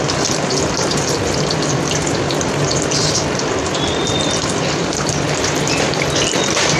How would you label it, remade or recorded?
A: remade